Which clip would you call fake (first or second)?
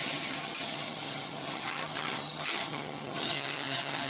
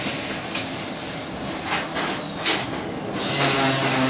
first